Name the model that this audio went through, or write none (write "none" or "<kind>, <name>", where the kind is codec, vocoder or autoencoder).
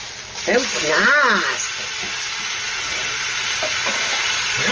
none